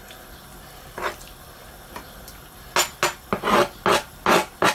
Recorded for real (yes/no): yes